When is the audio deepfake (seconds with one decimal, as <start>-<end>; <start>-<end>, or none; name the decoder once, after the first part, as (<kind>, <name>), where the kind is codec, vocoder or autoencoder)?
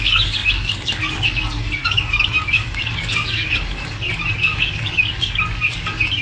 0.0-6.2 (codec, DAC)